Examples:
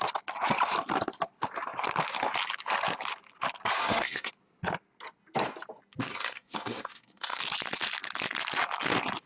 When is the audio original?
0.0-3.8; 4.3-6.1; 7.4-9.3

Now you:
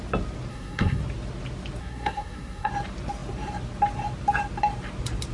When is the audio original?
0.0-0.5; 1.0-1.8; 2.7-5.3

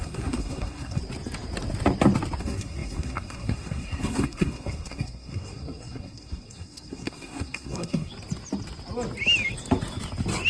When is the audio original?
1.0-2.4; 8.1-10.5